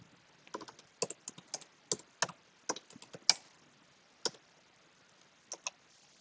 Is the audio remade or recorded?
recorded